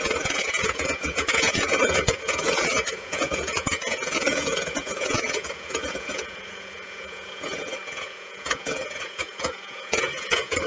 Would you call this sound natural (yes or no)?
no